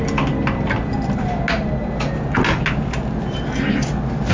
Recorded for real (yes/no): yes